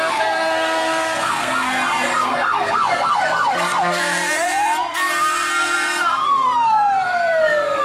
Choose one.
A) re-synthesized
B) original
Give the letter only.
A